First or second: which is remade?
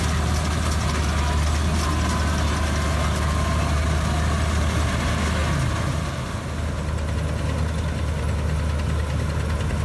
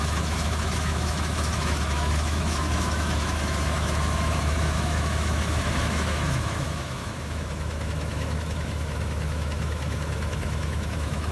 second